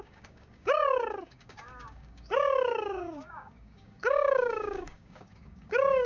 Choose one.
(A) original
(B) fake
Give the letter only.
B